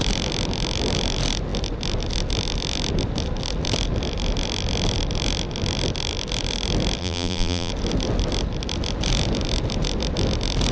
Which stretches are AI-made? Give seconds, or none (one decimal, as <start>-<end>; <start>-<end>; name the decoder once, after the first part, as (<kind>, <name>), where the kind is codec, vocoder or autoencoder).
7.0-7.7 (vocoder, BigVGAN v2)